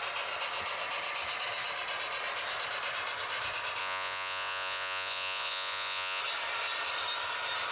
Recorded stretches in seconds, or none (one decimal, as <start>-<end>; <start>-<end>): 0.0-3.8; 6.2-7.7